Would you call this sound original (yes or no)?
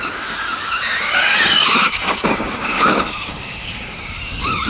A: no